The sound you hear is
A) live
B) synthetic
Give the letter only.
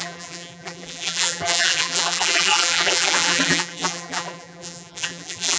B